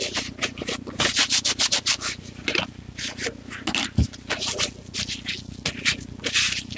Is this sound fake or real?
real